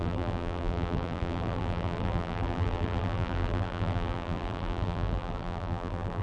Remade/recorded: remade